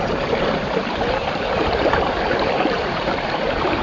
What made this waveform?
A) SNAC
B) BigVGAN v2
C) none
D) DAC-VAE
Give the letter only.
B